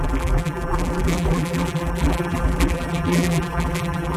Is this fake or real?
fake